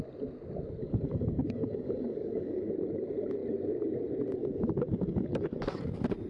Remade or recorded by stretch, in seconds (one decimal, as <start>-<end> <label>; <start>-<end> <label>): 0.0-0.8 recorded; 0.8-2.7 remade; 2.7-4.4 recorded; 4.4-5.8 remade; 5.8-6.3 recorded